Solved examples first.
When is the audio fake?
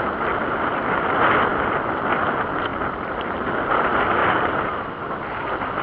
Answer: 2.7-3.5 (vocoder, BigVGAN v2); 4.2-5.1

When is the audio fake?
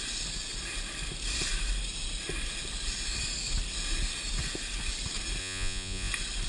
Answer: 5.4-6.1 (vocoder, Vocos)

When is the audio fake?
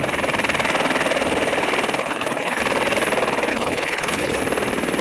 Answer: 2.0-2.6 (codec, HILCodec); 3.5-4.4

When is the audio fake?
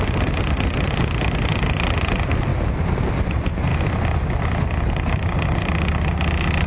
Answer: none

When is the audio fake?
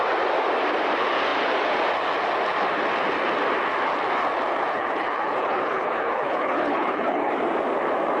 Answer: 4.7-7.3 (codec, HILCodec)